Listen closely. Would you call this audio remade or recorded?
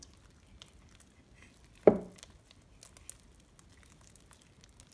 recorded